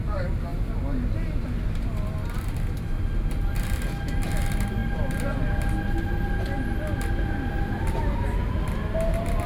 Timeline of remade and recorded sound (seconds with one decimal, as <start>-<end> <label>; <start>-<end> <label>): 0.0-9.5 recorded